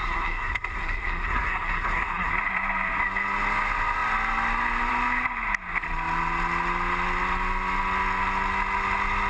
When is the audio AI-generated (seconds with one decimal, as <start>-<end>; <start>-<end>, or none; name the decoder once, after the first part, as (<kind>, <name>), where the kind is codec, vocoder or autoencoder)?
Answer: 0.0-2.3 (codec, SNAC)